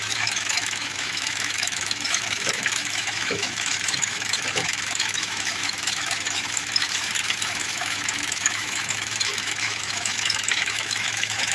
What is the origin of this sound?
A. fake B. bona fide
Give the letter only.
A